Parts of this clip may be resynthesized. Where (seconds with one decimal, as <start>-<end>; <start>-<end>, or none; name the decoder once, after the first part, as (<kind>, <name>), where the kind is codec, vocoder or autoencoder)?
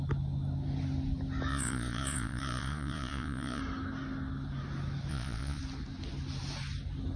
1.5-3.6 (vocoder, Vocos); 5.1-5.6